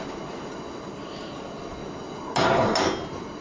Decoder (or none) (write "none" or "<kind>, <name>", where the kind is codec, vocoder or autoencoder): none